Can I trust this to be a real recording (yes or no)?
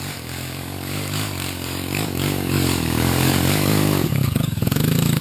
no